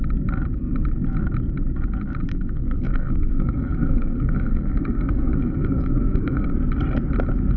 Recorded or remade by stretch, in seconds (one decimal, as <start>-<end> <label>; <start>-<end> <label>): 0.0-2.3 recorded; 2.3-6.5 remade; 6.5-7.6 recorded

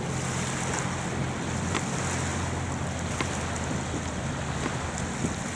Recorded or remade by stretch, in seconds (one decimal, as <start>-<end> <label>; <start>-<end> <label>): 0.0-5.6 recorded

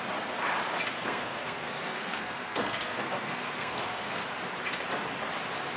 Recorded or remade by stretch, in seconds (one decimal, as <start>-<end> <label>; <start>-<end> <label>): 0.0-0.9 recorded; 0.9-4.2 remade; 4.2-5.8 recorded

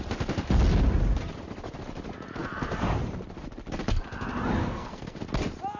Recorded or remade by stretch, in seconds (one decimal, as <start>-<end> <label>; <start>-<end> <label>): 0.0-4.6 recorded; 4.6-5.2 remade; 5.2-5.8 recorded

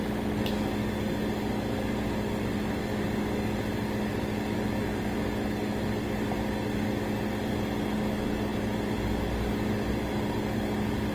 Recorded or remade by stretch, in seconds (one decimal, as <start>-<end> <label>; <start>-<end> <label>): 0.0-11.1 recorded

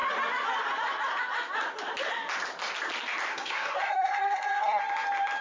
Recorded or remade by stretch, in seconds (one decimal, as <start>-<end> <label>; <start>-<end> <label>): 0.0-3.3 recorded; 3.3-4.8 remade; 4.8-5.4 recorded

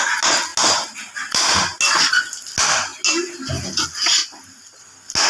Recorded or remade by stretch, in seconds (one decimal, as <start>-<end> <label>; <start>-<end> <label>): 0.0-5.3 recorded

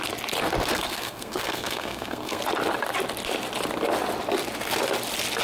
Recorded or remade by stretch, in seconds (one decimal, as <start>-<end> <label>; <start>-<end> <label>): 0.0-0.7 recorded; 0.7-2.4 remade; 2.4-5.4 recorded